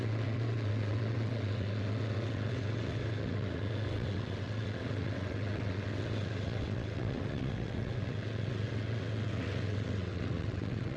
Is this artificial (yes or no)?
yes